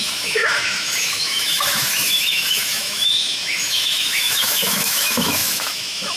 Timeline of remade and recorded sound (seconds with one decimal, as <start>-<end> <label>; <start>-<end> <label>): 0.0-6.2 remade